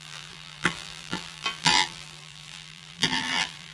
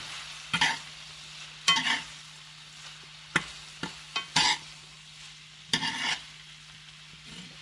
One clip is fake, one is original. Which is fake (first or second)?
first